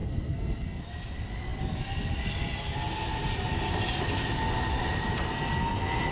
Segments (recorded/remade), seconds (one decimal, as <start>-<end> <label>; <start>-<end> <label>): 0.0-0.8 remade; 0.8-6.1 recorded